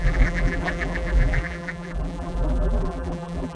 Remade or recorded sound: remade